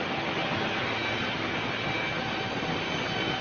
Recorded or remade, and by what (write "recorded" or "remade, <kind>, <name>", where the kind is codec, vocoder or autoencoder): recorded